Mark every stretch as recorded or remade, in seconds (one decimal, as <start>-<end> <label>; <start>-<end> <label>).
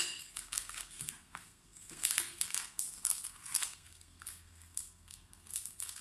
0.0-6.0 remade